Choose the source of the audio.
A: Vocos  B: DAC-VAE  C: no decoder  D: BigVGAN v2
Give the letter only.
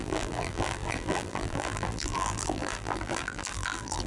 D